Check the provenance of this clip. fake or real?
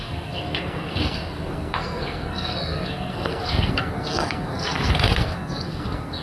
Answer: fake